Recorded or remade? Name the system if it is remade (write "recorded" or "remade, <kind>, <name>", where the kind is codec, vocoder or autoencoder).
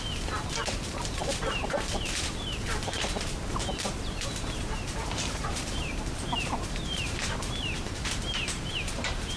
remade, vocoder, BigVGAN v2